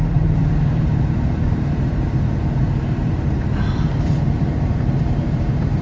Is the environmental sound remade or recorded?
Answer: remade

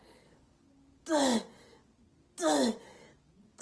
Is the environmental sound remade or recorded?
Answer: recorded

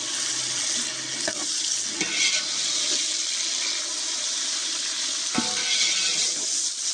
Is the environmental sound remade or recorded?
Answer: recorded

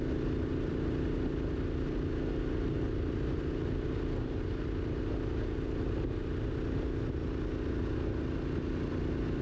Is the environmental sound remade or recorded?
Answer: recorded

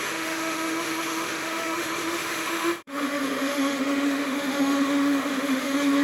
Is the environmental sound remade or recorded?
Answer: remade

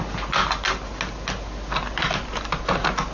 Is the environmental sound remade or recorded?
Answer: recorded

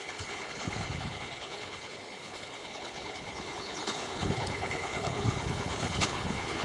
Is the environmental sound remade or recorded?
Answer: remade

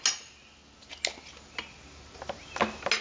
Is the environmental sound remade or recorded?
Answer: recorded